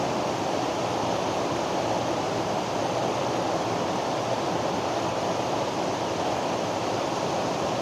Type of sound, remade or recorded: recorded